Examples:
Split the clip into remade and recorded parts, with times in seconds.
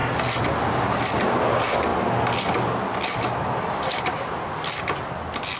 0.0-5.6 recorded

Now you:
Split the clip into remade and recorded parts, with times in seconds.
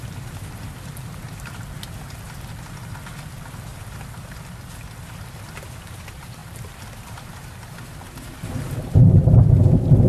0.0-3.7 recorded; 3.7-5.3 remade; 5.3-6.4 recorded; 6.4-7.0 remade; 7.0-10.1 recorded